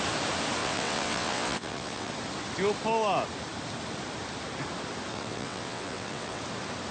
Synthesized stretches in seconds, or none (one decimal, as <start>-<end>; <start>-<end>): 0.6-2.1; 5.1-6.4